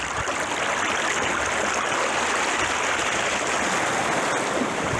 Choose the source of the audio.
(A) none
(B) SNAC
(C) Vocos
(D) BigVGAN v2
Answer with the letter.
A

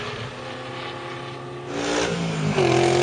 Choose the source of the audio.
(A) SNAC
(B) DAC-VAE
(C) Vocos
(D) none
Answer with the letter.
D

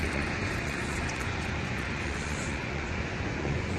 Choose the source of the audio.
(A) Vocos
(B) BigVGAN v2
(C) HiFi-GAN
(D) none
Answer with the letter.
A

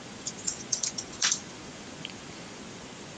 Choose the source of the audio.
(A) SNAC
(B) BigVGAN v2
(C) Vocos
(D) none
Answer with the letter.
C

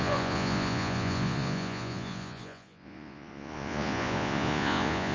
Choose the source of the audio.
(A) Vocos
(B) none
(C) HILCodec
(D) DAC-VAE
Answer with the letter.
A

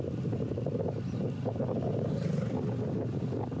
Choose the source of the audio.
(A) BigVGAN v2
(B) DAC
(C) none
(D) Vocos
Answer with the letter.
C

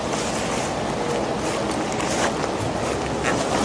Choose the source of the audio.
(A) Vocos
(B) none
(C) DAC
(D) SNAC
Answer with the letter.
B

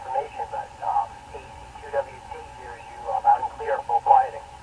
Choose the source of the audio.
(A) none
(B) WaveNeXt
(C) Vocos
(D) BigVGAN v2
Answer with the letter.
C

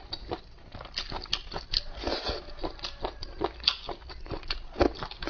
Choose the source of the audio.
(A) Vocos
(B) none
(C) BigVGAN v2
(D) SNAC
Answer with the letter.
B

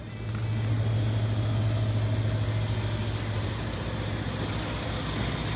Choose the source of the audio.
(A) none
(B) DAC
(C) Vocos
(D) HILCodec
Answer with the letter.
A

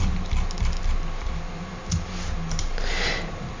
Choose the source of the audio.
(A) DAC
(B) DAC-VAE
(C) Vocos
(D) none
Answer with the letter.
D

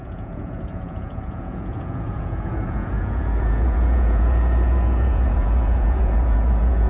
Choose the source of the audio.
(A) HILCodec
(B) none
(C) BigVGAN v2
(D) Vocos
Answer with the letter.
D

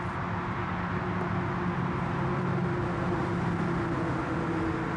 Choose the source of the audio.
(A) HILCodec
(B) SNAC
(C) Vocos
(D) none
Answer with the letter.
D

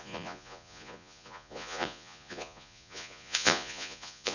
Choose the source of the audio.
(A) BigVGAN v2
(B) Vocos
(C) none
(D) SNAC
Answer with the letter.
B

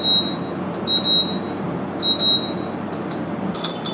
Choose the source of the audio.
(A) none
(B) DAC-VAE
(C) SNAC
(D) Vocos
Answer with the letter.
A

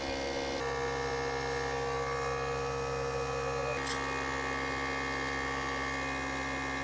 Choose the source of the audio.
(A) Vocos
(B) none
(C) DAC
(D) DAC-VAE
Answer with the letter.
B